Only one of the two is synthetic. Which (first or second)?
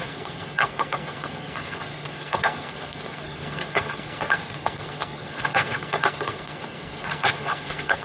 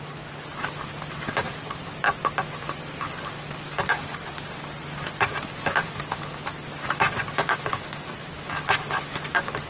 first